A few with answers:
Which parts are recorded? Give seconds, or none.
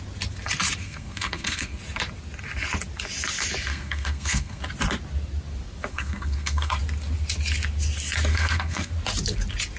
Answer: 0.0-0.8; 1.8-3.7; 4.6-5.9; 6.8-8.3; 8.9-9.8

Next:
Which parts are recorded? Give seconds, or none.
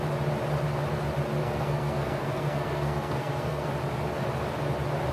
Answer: 0.0-1.4; 3.7-5.1